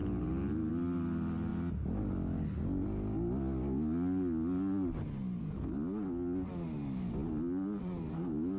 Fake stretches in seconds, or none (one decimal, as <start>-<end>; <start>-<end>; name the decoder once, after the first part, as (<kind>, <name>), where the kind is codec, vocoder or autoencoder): none